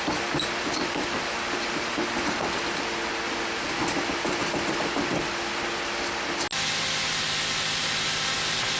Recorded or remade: recorded